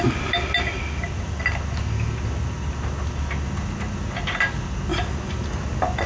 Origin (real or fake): real